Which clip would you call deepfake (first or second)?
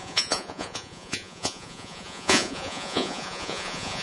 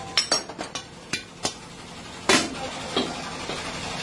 first